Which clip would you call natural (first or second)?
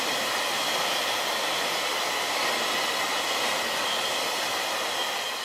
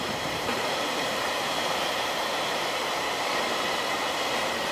first